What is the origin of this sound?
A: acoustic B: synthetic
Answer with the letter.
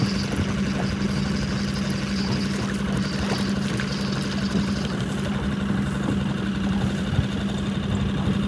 A